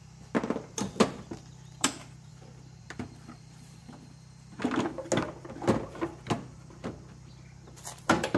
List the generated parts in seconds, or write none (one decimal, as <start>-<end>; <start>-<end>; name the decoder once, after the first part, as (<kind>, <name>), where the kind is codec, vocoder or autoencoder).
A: 0.0-2.3 (vocoder, BigVGAN v2); 2.8-3.8; 8.0-8.4